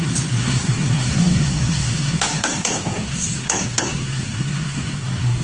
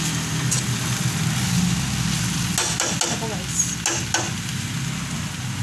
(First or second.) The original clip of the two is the second